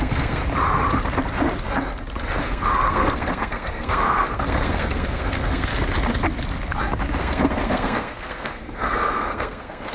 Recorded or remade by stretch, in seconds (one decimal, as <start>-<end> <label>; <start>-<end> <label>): 0.0-0.4 remade; 0.4-2.4 recorded; 2.4-5.7 remade; 5.7-7.2 recorded; 7.2-9.9 remade